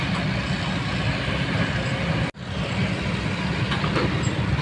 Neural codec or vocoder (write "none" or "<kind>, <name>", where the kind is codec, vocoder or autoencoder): none